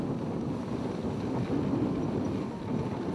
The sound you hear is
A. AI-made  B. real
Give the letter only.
B